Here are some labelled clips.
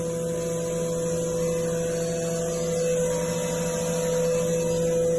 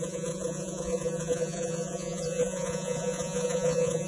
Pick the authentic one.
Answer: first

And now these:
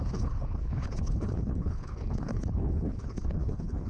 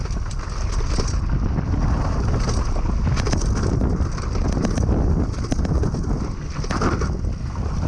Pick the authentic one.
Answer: second